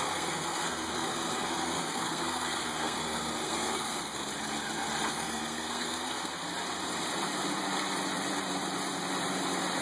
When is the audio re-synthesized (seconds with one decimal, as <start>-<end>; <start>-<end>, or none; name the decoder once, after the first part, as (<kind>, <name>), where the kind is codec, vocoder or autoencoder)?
0.0-4.3 (codec, SNAC); 5.1-6.5